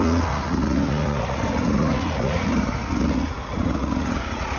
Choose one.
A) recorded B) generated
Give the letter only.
B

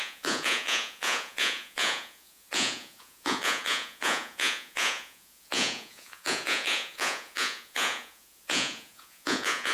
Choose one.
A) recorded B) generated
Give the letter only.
B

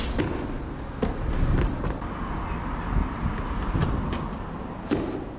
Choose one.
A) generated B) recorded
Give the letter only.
B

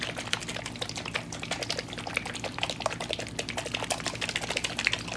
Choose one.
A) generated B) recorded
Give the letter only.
B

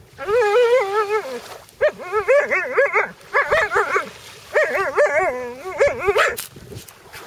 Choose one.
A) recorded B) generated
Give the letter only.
A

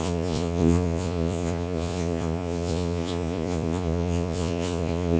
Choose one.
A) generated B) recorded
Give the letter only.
A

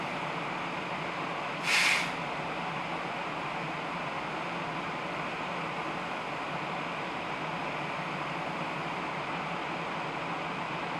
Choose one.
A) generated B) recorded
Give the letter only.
B